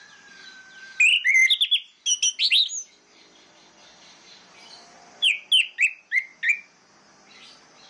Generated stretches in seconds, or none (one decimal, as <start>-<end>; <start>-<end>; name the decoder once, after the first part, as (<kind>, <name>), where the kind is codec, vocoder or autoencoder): 3.8-5.3 (vocoder, BigVGAN v2)